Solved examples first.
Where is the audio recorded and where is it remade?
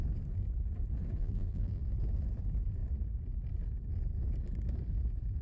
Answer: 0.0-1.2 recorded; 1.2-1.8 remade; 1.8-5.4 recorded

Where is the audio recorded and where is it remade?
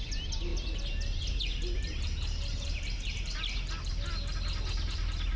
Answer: 0.0-5.4 recorded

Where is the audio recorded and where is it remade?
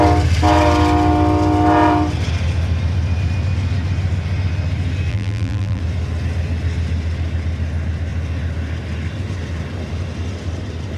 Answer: 0.0-5.1 recorded; 5.1-5.8 remade; 5.8-11.0 recorded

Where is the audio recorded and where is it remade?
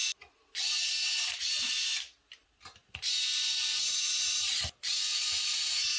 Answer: 0.0-1.7 remade; 1.7-5.1 recorded; 5.1-6.0 remade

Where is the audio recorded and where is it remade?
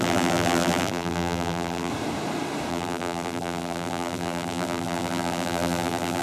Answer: 0.0-1.9 remade; 1.9-2.7 recorded; 2.7-6.2 remade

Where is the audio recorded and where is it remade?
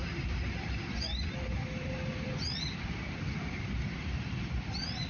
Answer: 0.0-5.1 remade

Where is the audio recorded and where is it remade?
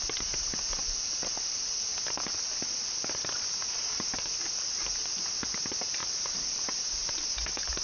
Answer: 0.0-6.0 recorded; 6.0-6.9 remade; 6.9-7.8 recorded